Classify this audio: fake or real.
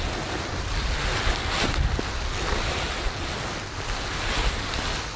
real